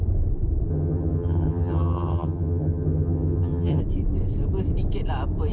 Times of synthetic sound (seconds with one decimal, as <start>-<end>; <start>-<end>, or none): 0.7-3.8